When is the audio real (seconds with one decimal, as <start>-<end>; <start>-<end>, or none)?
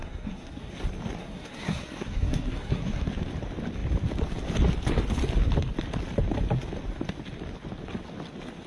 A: 0.7-1.2; 3.1-8.7